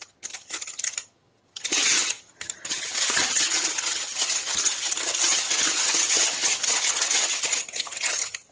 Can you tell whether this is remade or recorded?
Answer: remade